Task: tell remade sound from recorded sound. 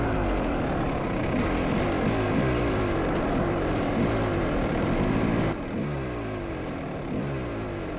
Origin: recorded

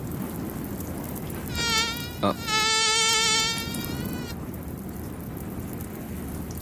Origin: recorded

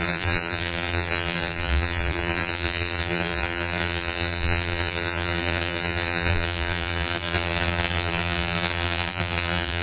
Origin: remade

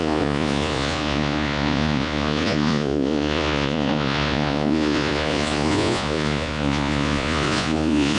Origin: remade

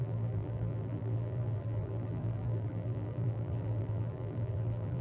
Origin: remade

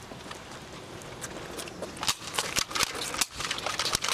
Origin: recorded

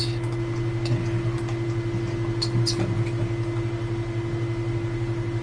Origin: recorded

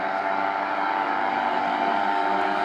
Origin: remade